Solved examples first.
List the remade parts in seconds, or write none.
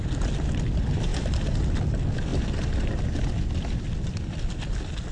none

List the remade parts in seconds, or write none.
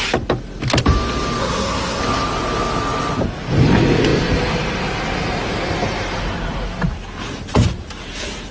1.4-2.0 (codec, SNAC)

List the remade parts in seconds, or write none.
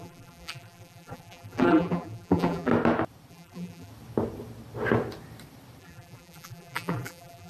0.0-2.7 (vocoder, BigVGAN v2); 3.3-3.9; 5.8-7.5